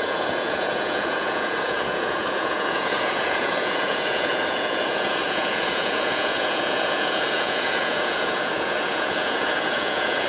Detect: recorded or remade remade